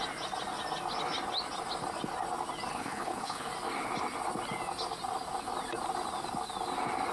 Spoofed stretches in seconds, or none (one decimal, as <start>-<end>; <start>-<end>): 2.7-3.5